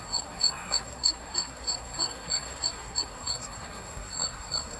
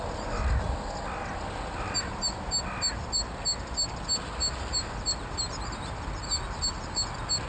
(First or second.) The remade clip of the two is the first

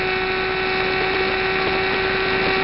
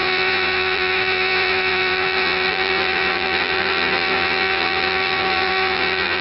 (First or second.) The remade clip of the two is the second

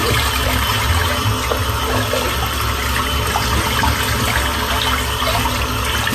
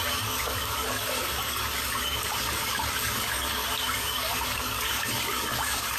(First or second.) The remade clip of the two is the second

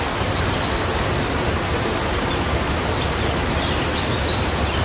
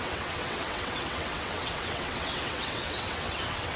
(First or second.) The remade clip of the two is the second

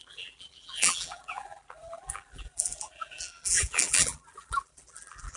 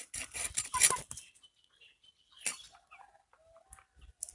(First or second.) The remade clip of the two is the first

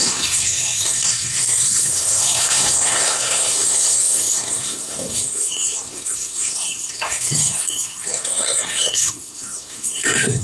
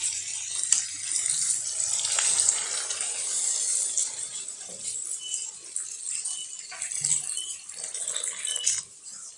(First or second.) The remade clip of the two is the first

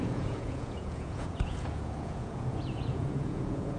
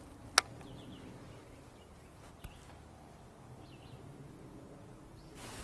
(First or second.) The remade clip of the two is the first